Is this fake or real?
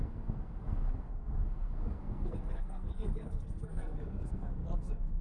fake